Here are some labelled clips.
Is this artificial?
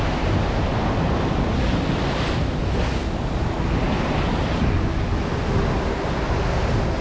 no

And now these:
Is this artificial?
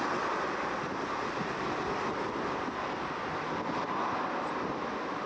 no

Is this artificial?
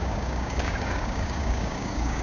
yes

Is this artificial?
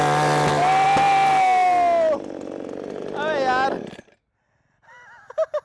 no